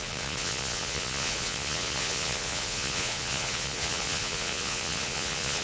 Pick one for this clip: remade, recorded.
remade